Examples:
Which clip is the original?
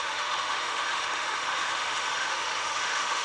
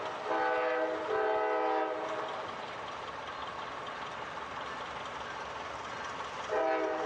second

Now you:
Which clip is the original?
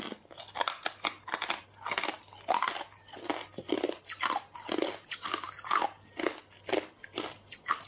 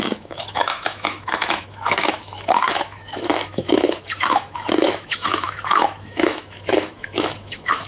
first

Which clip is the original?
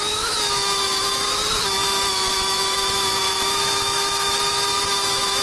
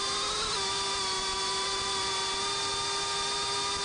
second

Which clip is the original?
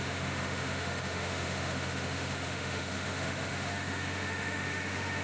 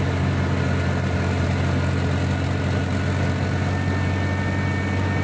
second